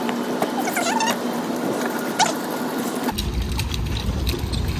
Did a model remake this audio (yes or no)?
yes